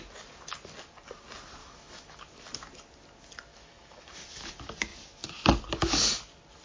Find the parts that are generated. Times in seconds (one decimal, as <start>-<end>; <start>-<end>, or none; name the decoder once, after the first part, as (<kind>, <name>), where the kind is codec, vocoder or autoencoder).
1.6-2.2 (autoencoder, DAC-VAE); 3.5-4.5